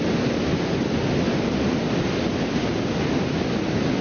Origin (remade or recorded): recorded